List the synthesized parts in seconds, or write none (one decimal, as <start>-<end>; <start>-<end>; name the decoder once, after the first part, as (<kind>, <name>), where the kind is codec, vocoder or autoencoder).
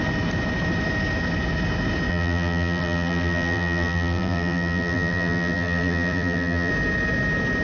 2.1-6.7 (vocoder, BigVGAN v2)